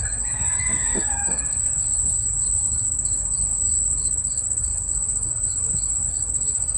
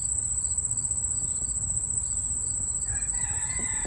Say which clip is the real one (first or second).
second